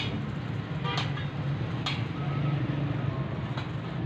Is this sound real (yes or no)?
yes